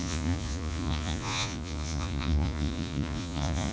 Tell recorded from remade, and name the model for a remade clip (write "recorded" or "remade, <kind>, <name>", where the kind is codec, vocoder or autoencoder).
remade, vocoder, Vocos